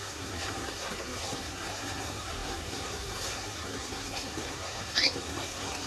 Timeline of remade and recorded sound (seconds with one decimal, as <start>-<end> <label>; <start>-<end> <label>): 0.0-5.9 remade